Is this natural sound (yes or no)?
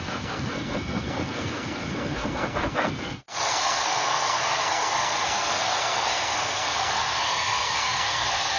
no